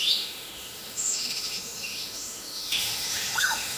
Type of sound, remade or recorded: remade